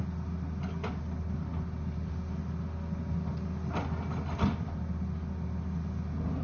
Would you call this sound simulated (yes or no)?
no